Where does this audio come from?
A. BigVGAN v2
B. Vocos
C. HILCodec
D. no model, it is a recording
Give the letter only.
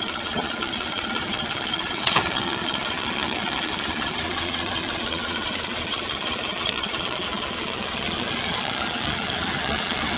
B